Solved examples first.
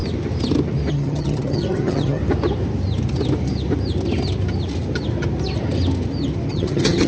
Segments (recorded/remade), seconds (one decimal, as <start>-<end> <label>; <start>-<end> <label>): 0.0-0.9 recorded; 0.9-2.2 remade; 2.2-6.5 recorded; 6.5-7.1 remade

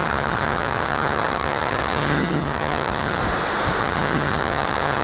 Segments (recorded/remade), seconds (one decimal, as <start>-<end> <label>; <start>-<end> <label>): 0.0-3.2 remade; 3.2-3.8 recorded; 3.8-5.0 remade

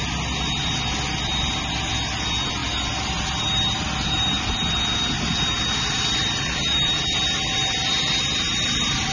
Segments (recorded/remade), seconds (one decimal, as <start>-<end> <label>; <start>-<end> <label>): 0.0-9.1 recorded

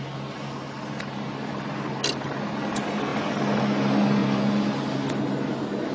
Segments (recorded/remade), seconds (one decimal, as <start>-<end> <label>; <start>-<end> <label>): 0.0-5.9 recorded

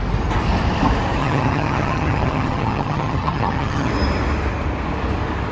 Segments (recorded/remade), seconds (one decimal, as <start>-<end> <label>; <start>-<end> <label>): 0.0-1.2 recorded; 1.2-3.9 remade; 3.9-5.5 recorded

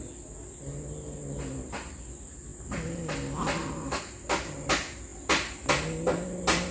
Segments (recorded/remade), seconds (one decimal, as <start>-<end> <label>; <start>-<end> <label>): 0.0-6.7 recorded